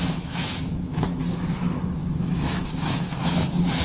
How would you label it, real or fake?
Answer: fake